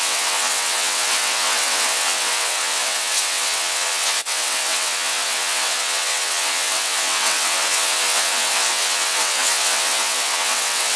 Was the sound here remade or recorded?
remade